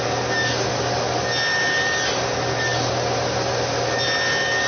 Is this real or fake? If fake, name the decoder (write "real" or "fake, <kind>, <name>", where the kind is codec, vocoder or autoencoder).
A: real